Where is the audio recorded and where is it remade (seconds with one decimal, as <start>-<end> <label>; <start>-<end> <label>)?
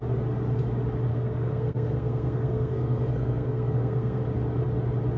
0.0-1.1 recorded; 1.1-4.2 remade; 4.2-5.2 recorded